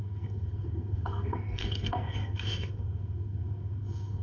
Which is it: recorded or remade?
remade